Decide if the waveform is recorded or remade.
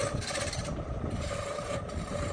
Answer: remade